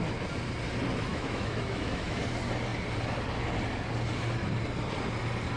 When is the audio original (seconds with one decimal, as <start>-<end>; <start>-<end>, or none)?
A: 0.0-1.1; 2.2-5.6